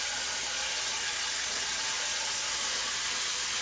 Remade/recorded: recorded